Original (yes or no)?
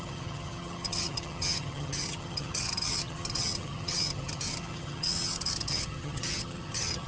no